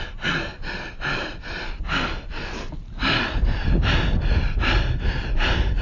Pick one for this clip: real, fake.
real